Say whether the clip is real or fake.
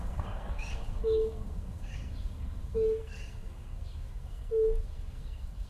fake